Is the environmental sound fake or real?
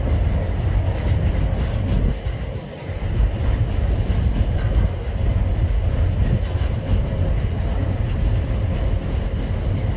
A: real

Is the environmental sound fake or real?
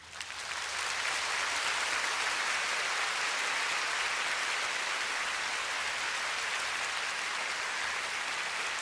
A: real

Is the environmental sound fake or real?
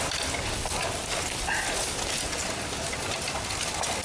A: real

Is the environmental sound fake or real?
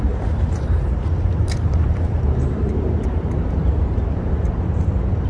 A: fake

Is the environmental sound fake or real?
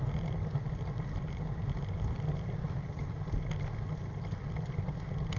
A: real